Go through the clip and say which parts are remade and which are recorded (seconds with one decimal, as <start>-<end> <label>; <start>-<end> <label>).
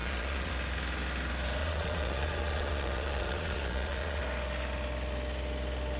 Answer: 0.0-0.5 remade; 0.5-1.6 recorded; 1.6-4.2 remade; 4.2-6.0 recorded